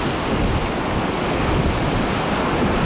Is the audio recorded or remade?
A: recorded